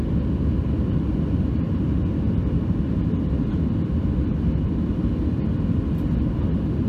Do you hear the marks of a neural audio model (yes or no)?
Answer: no